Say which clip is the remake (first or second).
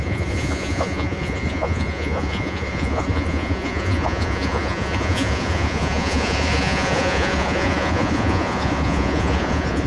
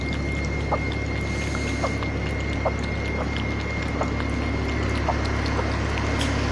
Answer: first